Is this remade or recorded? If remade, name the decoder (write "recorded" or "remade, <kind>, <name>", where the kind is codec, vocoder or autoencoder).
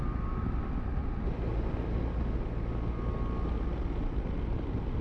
recorded